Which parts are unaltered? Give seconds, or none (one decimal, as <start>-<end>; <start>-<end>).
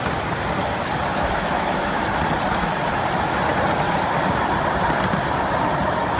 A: 0.0-1.1; 2.0-6.2